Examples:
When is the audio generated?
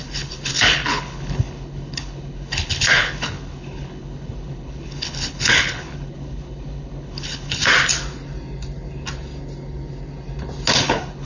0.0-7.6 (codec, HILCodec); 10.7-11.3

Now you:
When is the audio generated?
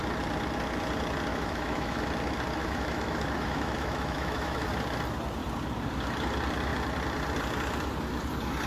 1.3-2.0 (autoencoder, DAC-VAE); 2.6-4.7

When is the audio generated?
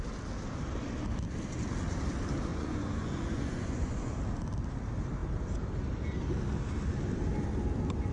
2.5-4.1 (vocoder, Vocos)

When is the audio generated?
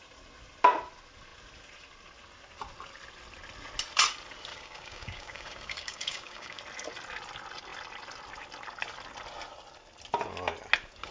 4.5-6.6 (codec, DAC)